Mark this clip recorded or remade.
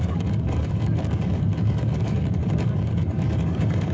remade